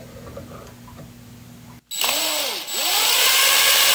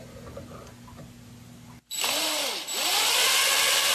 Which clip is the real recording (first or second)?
first